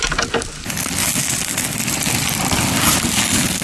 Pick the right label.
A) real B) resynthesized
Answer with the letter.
A